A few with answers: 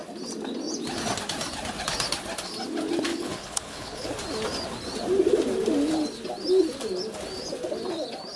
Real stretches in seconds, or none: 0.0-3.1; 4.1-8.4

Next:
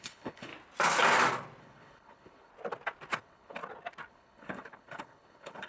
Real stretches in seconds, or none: 0.5-1.6; 2.5-3.2; 3.6-4.1

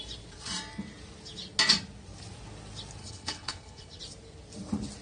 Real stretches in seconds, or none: 0.0-3.0; 4.0-5.0

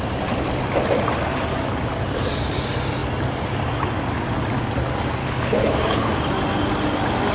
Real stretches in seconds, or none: 0.0-5.2; 6.1-7.3

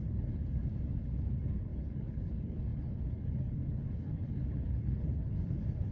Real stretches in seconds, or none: 0.4-1.0

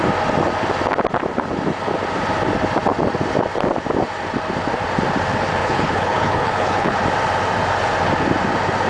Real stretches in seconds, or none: 0.0-5.6; 7.0-8.9

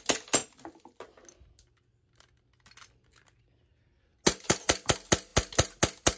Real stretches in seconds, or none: 0.0-6.2